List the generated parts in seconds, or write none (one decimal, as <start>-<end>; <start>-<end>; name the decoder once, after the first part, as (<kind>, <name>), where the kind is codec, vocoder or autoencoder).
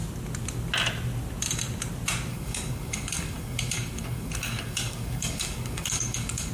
2.3-6.5 (codec, DAC)